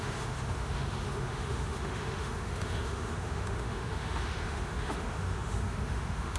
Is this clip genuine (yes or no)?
no